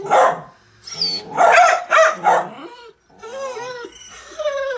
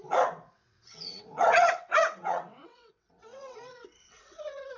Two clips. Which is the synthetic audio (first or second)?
second